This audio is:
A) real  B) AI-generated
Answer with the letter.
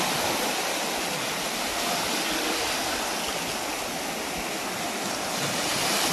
A